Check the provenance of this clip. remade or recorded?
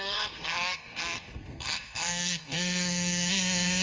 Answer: remade